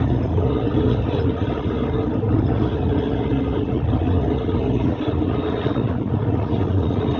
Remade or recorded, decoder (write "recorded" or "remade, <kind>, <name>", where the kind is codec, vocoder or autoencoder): remade, vocoder, Vocos